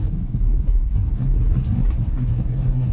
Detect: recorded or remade remade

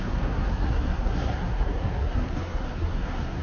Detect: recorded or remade remade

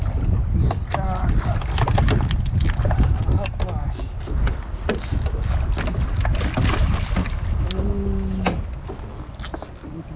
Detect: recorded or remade recorded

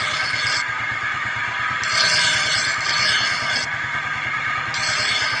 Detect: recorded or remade remade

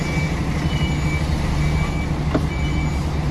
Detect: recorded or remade recorded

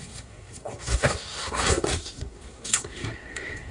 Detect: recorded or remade remade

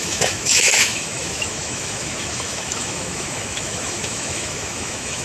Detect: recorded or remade remade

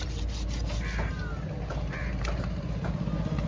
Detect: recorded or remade recorded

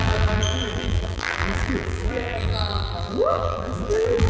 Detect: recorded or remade remade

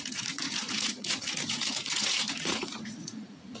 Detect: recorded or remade remade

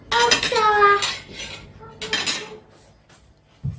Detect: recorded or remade recorded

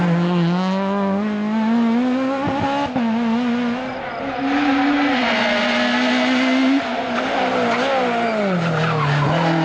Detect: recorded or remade recorded